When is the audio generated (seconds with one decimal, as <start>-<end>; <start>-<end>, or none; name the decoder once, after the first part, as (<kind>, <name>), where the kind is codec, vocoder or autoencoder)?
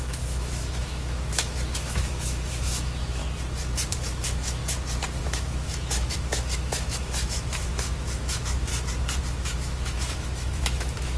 0.0-3.2 (autoencoder, DAC-VAE); 3.9-4.6; 5.2-8.7; 9.2-11.2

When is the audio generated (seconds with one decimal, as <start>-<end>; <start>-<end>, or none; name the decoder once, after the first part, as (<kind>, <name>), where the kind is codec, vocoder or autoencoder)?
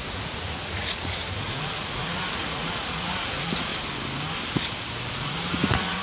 0.0-3.7 (vocoder, Vocos); 5.1-6.0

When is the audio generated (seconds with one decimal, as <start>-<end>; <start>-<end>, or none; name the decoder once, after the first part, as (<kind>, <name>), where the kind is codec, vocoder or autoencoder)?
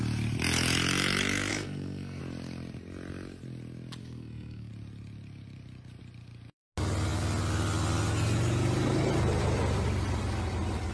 1.5-2.2 (codec, SNAC); 4.0-4.7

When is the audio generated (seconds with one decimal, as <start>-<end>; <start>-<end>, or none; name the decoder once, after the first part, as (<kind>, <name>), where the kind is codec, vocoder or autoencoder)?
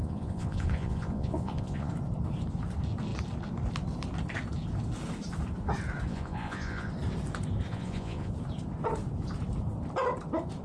0.0-1.9 (vocoder, Vocos); 6.1-6.9; 7.7-8.3